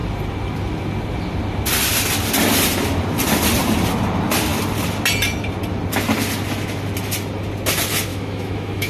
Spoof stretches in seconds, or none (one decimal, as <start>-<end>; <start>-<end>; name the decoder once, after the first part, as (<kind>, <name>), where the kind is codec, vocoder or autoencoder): 8.1-8.9 (autoencoder, DAC-VAE)